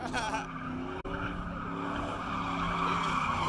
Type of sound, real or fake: real